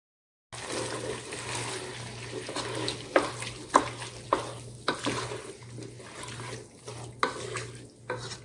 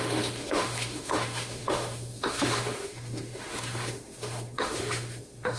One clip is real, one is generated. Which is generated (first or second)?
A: second